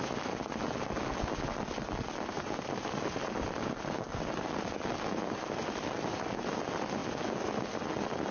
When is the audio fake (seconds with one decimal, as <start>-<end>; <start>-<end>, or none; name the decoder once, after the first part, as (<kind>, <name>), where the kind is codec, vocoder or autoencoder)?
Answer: none